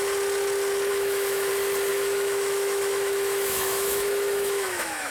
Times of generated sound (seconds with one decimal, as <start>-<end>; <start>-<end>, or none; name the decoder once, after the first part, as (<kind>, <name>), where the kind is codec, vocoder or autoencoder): 0.9-1.5 (autoencoder, DAC-VAE); 1.9-5.1